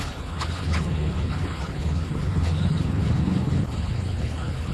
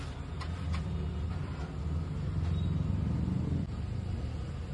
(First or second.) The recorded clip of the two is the second